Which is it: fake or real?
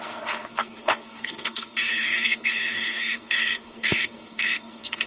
fake